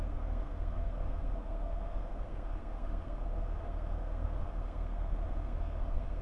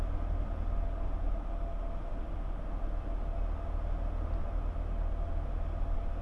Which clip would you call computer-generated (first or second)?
first